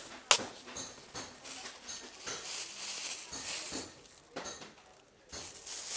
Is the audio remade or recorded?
recorded